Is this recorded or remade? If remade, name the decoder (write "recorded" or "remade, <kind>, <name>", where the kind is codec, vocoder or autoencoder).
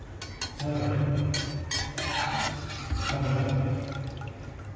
recorded